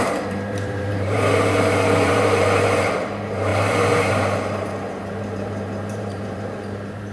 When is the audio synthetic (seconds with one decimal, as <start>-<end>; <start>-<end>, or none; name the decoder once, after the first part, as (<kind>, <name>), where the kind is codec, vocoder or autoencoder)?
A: 0.0-7.1 (vocoder, BigVGAN v2)